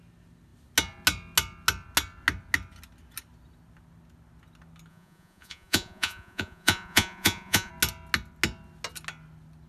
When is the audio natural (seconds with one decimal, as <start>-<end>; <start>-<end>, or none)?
0.0-4.9; 7.7-9.7